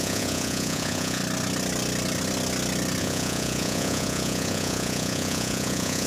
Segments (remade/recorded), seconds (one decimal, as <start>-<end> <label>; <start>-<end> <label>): 0.0-1.2 remade; 1.2-3.0 recorded; 3.0-6.1 remade